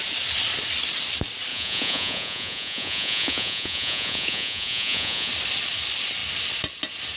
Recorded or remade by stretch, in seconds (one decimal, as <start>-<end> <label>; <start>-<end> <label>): 0.0-1.5 recorded; 1.5-5.3 remade; 5.3-7.2 recorded